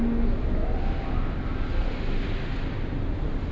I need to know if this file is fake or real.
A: real